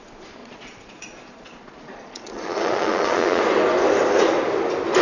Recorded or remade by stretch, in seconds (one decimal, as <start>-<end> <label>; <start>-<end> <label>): 0.0-0.4 recorded; 0.4-3.4 remade; 3.4-5.0 recorded